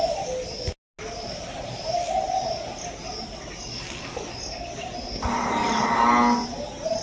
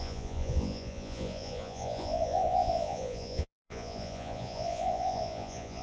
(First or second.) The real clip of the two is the first